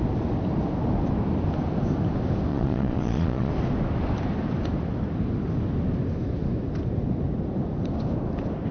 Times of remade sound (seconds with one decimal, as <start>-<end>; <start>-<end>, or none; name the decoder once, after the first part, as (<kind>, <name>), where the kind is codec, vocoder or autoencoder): 2.5-3.5 (vocoder, Vocos)